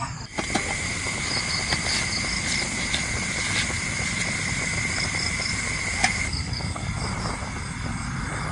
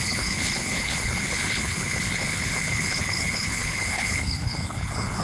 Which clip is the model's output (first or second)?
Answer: second